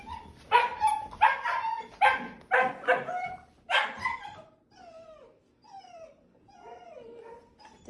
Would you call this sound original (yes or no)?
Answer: yes